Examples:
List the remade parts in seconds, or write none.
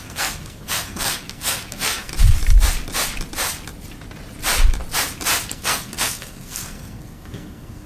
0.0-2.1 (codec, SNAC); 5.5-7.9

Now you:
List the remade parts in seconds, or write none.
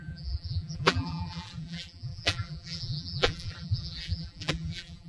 0.0-5.1 (vocoder, BigVGAN v2)